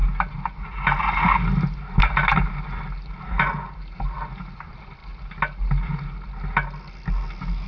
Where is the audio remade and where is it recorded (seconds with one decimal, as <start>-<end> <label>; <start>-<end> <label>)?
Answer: 0.0-7.7 recorded